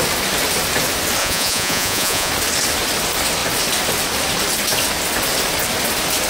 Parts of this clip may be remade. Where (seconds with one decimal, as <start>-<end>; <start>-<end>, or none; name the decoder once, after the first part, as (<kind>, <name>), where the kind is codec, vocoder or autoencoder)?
1.2-2.3 (vocoder, Vocos)